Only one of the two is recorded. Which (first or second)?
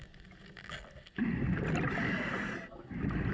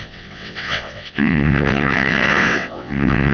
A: first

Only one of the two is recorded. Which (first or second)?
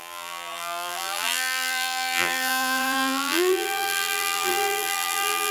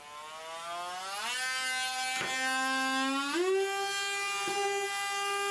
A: second